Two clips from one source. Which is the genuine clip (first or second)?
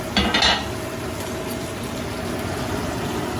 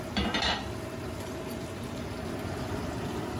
first